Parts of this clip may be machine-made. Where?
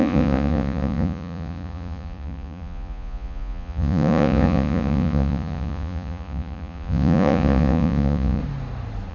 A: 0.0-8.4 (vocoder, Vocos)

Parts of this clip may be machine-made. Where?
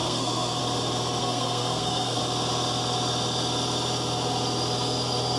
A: 0.0-0.6 (codec, SNAC); 1.2-2.2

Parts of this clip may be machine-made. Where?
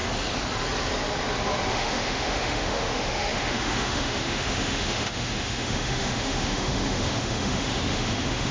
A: 1.7-8.5 (autoencoder, DAC-VAE)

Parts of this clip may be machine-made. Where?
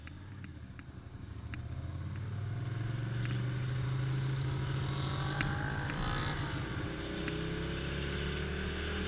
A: none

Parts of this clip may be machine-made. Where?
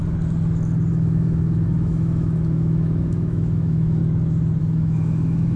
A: 0.9-4.0 (autoencoder, DAC-VAE); 4.6-5.6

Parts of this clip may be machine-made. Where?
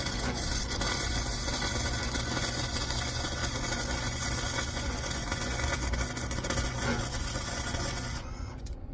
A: 0.0-8.9 (vocoder, Vocos)